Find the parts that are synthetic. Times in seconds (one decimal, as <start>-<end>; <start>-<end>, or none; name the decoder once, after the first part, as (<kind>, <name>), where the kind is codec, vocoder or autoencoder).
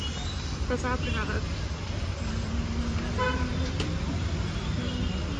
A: none